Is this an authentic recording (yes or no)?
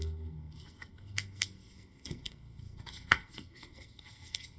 no